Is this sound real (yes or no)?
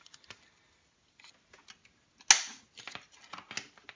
yes